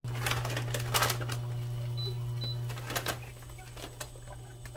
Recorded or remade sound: recorded